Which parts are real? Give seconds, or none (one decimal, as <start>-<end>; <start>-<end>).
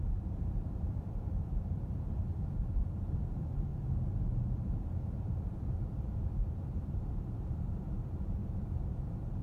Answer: 3.7-4.5; 8.4-9.0